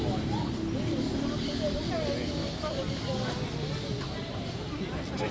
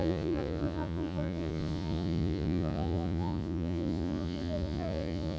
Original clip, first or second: first